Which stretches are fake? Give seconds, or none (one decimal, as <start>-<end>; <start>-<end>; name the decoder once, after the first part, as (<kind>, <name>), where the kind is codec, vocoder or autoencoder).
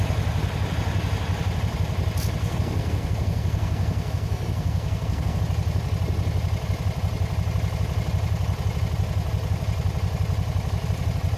2.4-5.4 (codec, SNAC)